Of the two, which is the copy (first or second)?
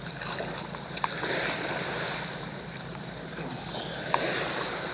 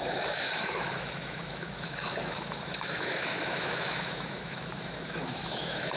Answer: second